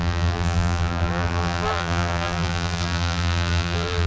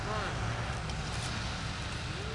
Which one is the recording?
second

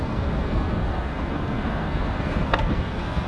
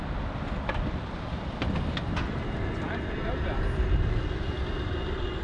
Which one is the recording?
second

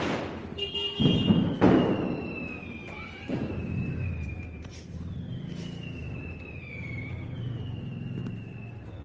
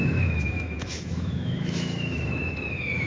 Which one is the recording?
first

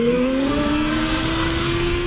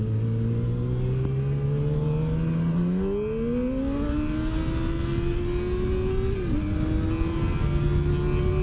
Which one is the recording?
second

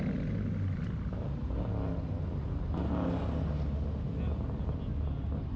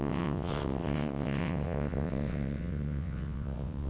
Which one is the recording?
first